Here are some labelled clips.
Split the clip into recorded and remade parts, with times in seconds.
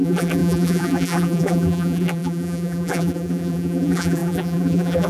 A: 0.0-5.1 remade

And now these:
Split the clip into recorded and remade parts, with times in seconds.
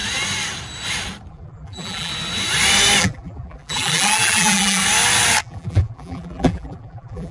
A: 0.0-1.3 recorded; 1.3-2.1 remade; 2.1-3.0 recorded; 3.0-4.8 remade; 4.8-5.4 recorded; 5.4-7.3 remade